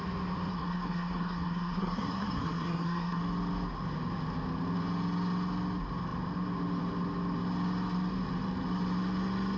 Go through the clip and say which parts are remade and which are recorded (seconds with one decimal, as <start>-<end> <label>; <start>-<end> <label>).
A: 0.0-0.5 recorded; 0.5-3.2 remade; 3.2-9.6 recorded